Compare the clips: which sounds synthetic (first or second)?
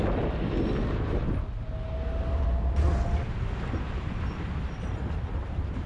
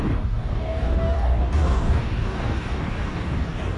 second